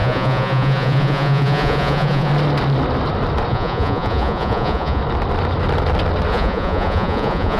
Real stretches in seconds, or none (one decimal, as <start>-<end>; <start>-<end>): 2.3-3.5; 5.0-6.3